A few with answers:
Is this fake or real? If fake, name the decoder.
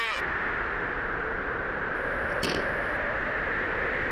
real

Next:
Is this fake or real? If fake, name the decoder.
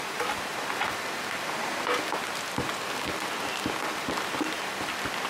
real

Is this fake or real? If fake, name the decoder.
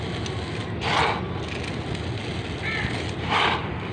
real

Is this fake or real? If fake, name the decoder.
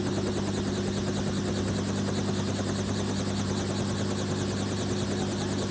real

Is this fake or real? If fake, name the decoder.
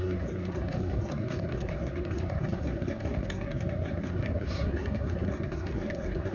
fake, codec, SNAC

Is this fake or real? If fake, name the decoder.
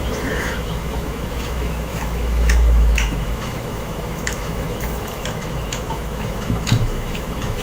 fake, autoencoder, DAC-VAE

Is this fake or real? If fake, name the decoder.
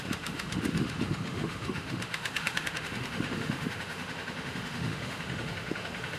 fake, autoencoder, DAC-VAE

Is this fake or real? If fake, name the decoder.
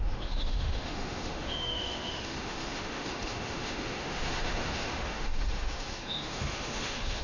fake, autoencoder, DAC-VAE